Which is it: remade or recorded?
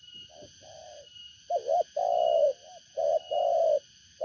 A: recorded